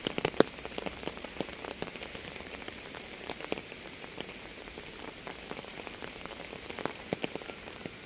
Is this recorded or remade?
remade